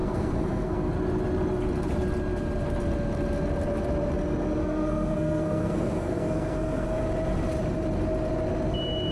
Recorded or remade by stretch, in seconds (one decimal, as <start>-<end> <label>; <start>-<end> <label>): 0.0-0.9 remade; 0.9-4.6 recorded; 4.6-7.0 remade; 7.0-9.1 recorded